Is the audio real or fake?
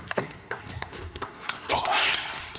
fake